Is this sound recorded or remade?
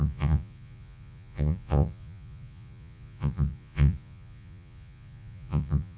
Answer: remade